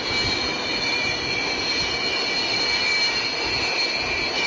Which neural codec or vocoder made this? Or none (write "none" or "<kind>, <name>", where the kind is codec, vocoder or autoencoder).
none